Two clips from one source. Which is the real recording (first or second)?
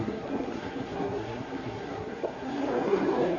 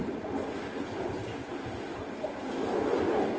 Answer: second